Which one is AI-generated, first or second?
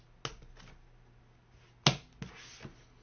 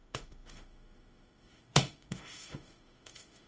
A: second